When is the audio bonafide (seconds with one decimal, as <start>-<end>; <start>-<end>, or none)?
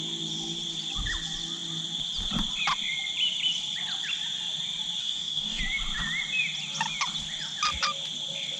0.0-5.0; 5.6-8.6